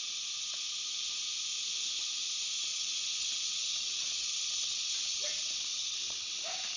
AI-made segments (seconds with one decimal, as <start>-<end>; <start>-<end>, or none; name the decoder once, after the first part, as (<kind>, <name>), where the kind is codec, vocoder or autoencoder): 2.7-6.3 (vocoder, WaveNeXt)